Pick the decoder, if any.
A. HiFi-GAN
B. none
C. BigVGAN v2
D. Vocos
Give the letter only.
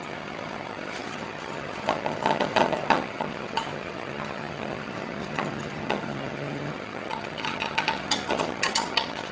A